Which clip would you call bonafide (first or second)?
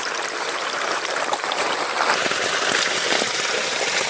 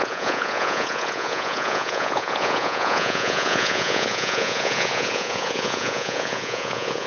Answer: first